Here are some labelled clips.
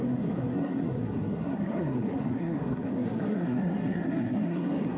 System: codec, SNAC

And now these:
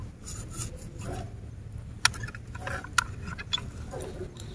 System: none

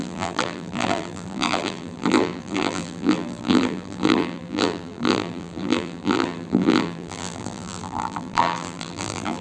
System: vocoder, BigVGAN v2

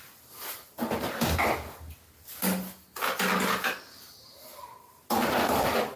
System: none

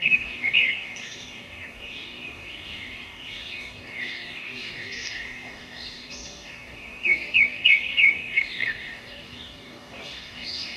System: codec, DAC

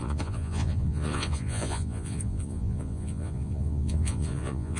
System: vocoder, Vocos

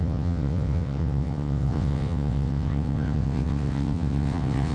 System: vocoder, WaveNeXt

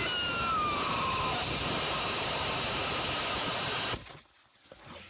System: none